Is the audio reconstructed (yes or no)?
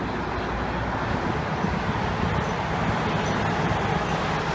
no